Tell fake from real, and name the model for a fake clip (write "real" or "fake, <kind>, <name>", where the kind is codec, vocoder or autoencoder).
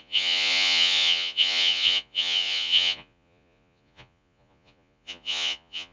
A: fake, vocoder, Vocos